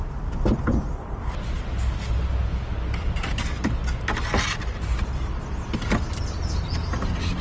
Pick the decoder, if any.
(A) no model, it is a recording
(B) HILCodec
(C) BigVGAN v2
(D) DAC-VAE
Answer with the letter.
A